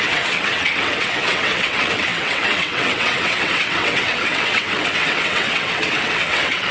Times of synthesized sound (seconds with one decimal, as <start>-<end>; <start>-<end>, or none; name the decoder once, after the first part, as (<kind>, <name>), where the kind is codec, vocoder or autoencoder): 0.0-6.7 (vocoder, WaveNeXt)